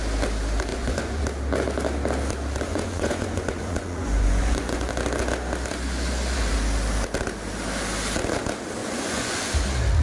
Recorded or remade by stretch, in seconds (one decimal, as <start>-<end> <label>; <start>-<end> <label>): 0.0-0.7 recorded; 0.7-1.2 remade; 1.2-2.7 recorded; 2.7-4.9 remade; 4.9-8.8 recorded; 8.8-9.5 remade; 9.5-10.0 recorded